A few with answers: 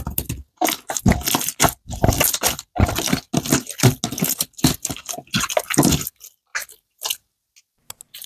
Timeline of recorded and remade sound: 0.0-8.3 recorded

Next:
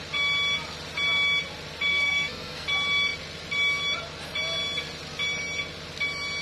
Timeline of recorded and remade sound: 0.0-1.9 recorded; 1.9-2.7 remade; 2.7-6.4 recorded

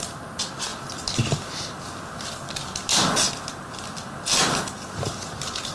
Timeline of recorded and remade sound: 0.0-5.7 recorded

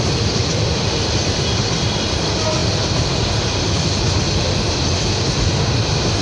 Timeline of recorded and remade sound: 0.0-6.2 recorded

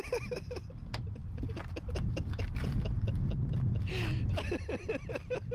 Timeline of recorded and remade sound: 0.0-5.5 recorded

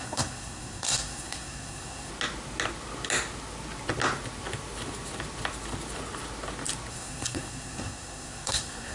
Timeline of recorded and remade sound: 0.0-2.1 remade; 2.1-6.9 recorded; 6.9-8.9 remade